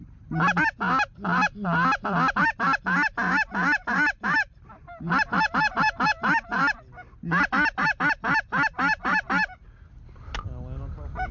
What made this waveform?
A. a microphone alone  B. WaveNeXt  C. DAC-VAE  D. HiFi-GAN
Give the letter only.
A